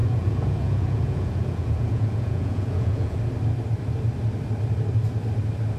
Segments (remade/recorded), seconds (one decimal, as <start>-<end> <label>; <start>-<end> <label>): 0.0-3.2 remade; 3.2-5.8 recorded